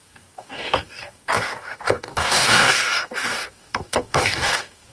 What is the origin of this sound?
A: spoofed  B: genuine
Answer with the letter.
A